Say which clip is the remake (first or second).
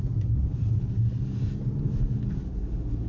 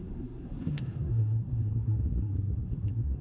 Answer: second